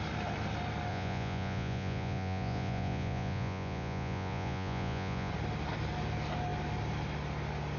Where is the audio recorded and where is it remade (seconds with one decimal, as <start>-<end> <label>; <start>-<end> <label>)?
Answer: 0.0-0.9 recorded; 0.9-5.3 remade; 5.3-7.8 recorded